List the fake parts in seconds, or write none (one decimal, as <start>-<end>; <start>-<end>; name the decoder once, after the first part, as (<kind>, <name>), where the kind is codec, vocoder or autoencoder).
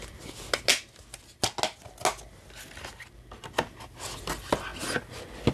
none